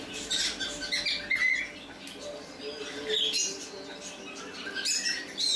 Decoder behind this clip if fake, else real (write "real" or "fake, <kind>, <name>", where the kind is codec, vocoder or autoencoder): real